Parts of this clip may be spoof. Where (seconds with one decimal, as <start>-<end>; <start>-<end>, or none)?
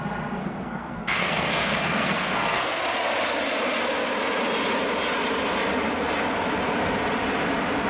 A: 0.4-2.8